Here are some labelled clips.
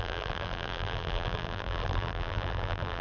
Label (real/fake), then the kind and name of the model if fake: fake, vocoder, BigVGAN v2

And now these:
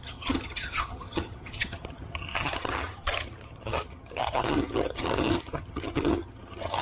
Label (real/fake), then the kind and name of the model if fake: fake, vocoder, HiFi-GAN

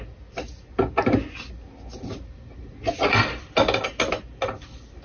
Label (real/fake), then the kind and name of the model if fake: real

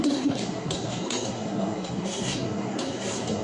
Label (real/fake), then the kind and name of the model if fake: fake, codec, SNAC